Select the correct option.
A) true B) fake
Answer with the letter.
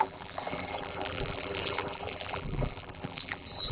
B